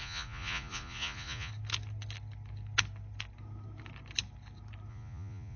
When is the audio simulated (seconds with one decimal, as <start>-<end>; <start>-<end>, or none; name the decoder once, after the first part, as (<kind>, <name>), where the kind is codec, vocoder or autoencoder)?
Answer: 0.0-1.5 (vocoder, Vocos); 4.9-5.6